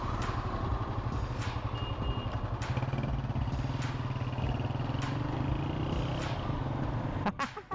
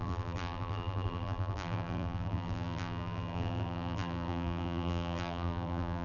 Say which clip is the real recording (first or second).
first